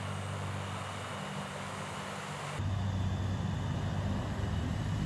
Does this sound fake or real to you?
real